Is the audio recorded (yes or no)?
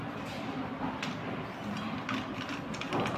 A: yes